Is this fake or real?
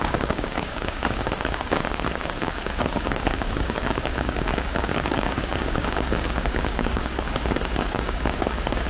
fake